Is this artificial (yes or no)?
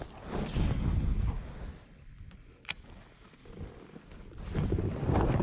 no